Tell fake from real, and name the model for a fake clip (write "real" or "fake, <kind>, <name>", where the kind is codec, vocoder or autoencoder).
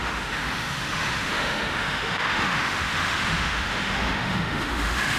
fake, autoencoder, DAC-VAE